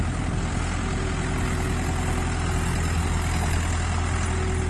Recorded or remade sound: recorded